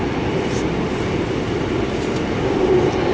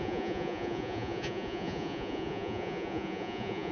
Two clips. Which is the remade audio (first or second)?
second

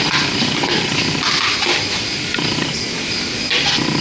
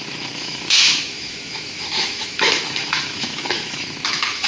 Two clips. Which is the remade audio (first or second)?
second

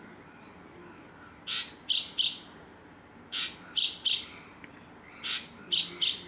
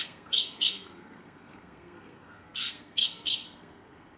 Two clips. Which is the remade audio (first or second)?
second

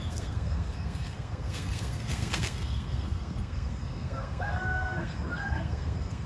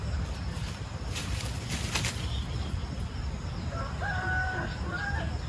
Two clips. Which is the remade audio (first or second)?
first